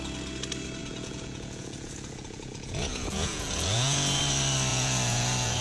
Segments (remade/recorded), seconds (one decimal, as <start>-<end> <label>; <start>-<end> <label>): 0.0-0.8 recorded; 0.8-4.2 remade; 4.2-4.7 recorded; 4.7-5.6 remade